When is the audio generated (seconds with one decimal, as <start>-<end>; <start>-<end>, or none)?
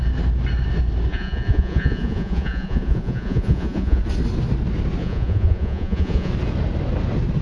1.1-4.0; 5.0-6.3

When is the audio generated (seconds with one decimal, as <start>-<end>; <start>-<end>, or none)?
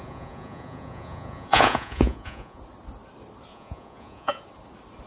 0.0-2.6; 3.5-4.4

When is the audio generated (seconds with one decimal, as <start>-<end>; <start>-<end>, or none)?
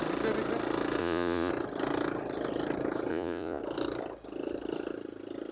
1.0-1.5; 3.1-3.6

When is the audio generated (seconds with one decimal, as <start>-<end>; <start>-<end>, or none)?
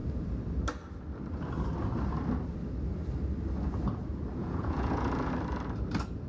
4.4-5.3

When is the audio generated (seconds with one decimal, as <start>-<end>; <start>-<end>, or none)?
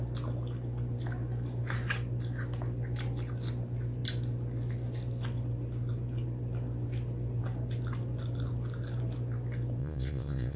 9.8-10.6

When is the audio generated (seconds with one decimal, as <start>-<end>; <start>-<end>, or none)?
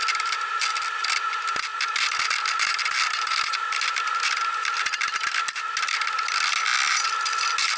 none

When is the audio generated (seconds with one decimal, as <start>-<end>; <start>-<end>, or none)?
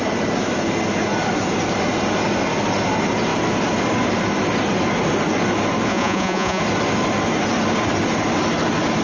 5.9-6.6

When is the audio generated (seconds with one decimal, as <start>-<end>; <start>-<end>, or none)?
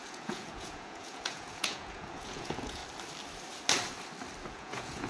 0.0-2.8; 4.5-5.1